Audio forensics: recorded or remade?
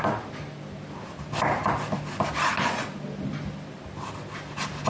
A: recorded